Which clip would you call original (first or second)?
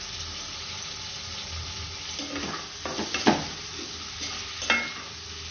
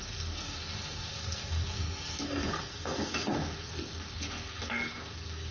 first